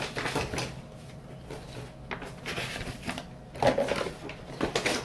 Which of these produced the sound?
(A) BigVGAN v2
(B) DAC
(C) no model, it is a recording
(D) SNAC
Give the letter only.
C